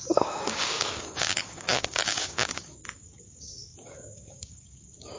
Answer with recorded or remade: remade